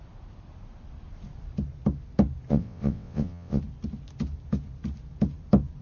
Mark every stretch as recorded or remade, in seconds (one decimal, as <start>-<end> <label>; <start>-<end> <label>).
0.0-2.5 recorded; 2.5-3.6 remade; 3.6-5.8 recorded